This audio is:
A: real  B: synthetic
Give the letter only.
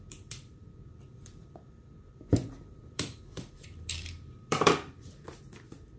B